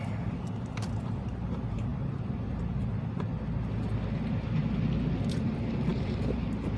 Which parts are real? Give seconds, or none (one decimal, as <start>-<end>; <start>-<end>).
1.9-5.3